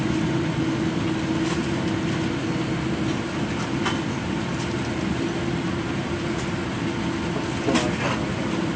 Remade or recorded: recorded